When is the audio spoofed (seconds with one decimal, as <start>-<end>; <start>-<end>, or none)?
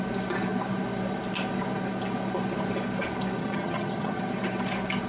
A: 3.4-4.2